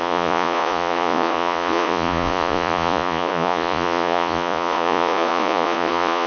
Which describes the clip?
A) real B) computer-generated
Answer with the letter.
B